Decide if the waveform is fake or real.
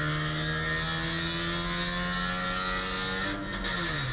real